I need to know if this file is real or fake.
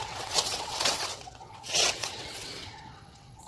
fake